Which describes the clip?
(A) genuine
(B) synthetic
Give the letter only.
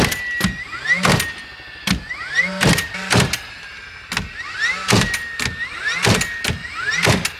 A